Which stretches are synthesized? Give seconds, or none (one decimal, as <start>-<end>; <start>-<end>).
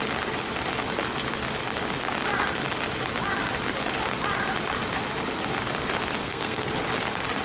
6.2-6.8